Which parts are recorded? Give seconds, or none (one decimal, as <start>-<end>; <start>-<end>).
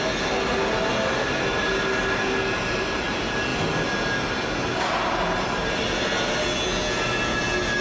0.0-7.8